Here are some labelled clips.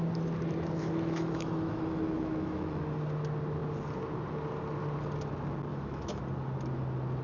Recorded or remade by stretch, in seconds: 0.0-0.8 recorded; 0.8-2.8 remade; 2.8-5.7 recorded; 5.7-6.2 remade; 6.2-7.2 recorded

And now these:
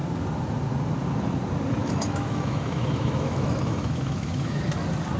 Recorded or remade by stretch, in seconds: 0.0-1.8 recorded; 1.8-4.6 remade; 4.6-5.2 recorded

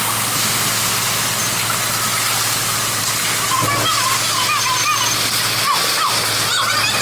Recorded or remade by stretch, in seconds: 0.0-7.0 recorded

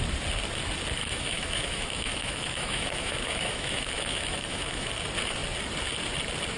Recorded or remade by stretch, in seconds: 0.0-1.0 recorded; 1.0-4.9 remade; 4.9-6.6 recorded